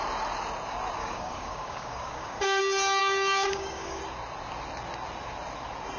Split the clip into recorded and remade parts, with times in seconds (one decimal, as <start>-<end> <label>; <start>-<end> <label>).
0.0-1.0 recorded; 1.0-2.6 remade; 2.6-3.0 recorded; 3.0-4.0 remade; 4.0-6.0 recorded